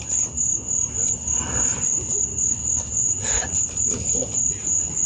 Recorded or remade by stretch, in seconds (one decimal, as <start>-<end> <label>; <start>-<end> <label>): 0.0-3.0 recorded; 3.0-3.6 remade; 3.6-4.5 recorded; 4.5-5.1 remade